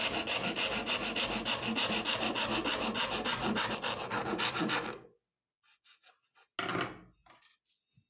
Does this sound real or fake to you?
real